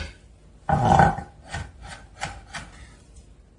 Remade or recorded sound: recorded